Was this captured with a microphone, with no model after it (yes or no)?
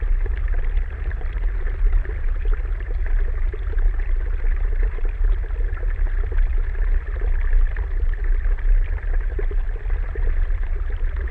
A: yes